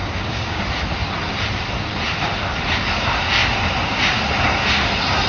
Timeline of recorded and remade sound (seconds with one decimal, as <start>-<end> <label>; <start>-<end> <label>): 0.0-0.6 remade; 0.6-5.3 recorded